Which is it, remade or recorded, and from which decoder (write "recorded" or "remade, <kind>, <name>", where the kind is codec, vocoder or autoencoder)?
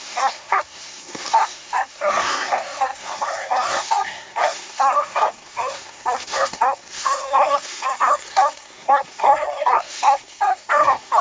remade, codec, SNAC